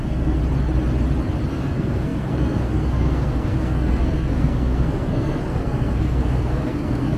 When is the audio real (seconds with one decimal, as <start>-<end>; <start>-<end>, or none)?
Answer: 0.4-1.5